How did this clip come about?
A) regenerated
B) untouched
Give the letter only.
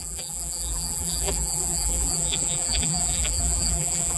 A